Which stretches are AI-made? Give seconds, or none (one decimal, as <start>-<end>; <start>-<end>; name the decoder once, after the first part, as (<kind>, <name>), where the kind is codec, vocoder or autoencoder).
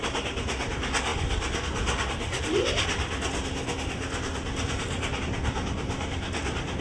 none